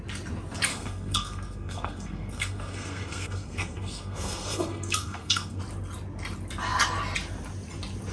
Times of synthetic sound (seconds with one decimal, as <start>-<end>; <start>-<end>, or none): 0.7-5.6